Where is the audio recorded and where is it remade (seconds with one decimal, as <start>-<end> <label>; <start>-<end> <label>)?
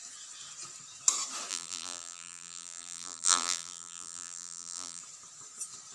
0.0-1.5 recorded; 1.5-5.0 remade; 5.0-5.9 recorded